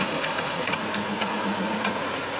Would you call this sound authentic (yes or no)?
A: no